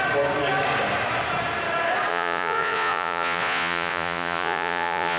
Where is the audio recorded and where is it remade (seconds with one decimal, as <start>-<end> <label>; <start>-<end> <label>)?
0.0-2.1 recorded; 2.1-5.2 remade